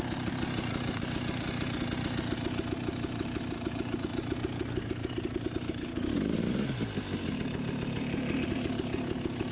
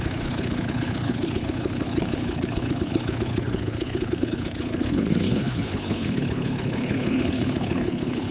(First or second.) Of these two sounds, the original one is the first